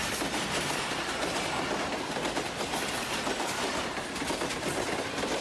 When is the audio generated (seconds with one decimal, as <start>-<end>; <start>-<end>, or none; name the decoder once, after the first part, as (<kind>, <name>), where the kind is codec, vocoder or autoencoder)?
0.0-1.5 (vocoder, BigVGAN v2)